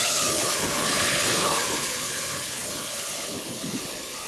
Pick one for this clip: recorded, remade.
remade